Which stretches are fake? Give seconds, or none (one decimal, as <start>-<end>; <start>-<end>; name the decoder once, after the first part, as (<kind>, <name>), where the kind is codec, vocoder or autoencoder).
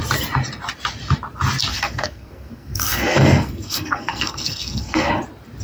1.7-5.1 (codec, SNAC)